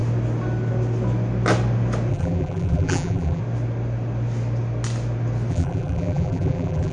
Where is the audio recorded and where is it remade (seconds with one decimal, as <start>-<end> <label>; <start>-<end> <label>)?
0.0-2.1 recorded; 2.1-3.4 remade; 3.4-5.5 recorded; 5.5-6.9 remade